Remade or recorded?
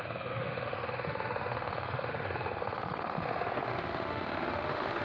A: remade